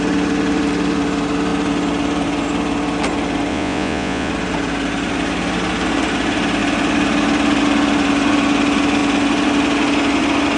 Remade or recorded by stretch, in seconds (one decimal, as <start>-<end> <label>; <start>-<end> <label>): 0.0-3.5 recorded; 3.5-4.3 remade; 4.3-10.6 recorded